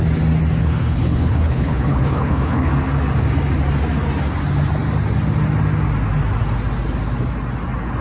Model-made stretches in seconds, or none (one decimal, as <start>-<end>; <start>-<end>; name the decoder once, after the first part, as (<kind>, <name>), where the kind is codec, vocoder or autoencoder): 0.6-2.7 (codec, HILCodec)